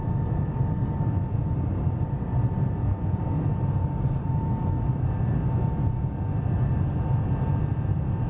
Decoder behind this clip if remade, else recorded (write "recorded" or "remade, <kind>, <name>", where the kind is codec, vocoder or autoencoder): recorded